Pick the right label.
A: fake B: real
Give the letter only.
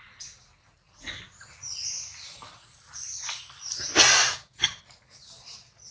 B